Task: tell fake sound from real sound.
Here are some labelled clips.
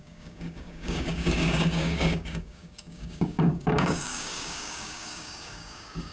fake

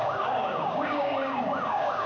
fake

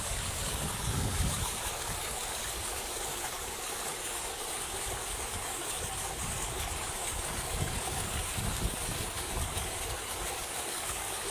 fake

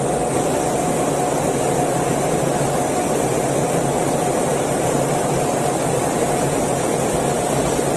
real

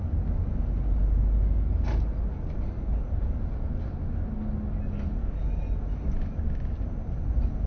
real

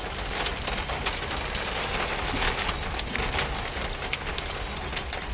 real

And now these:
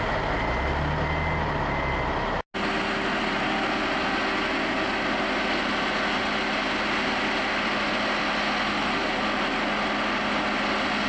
real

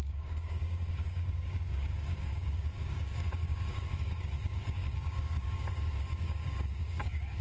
fake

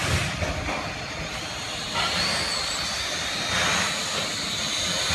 real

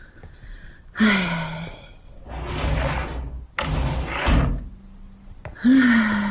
real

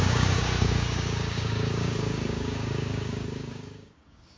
fake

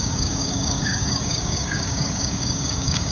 fake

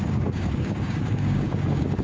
fake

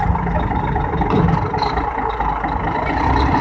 real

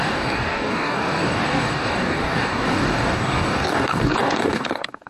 fake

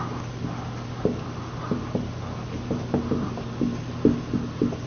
real